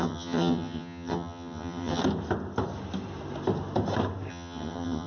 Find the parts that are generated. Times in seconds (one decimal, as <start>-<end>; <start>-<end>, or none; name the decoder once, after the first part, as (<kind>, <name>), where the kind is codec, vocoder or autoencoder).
0.0-2.0 (vocoder, HiFi-GAN); 4.3-5.1